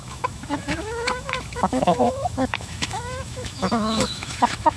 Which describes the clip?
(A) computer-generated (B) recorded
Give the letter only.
A